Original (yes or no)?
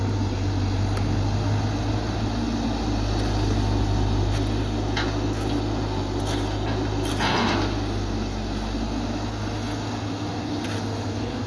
yes